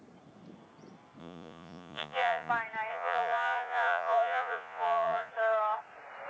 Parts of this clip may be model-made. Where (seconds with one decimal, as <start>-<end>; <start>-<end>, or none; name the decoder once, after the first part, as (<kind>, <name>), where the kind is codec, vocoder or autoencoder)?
1.2-2.5 (vocoder, Vocos); 2.9-5.3